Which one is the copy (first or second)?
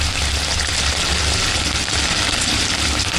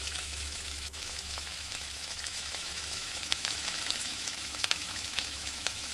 second